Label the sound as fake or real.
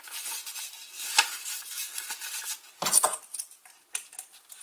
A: real